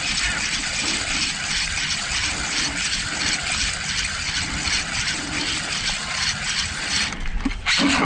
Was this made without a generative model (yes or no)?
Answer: yes